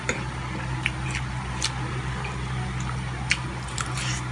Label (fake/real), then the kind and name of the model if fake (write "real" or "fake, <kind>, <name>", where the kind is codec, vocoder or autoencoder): real